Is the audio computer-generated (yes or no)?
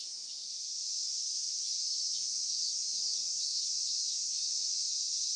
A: yes